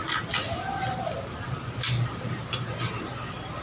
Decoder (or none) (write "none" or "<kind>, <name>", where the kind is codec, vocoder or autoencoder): none